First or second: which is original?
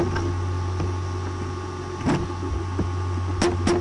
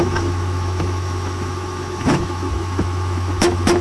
first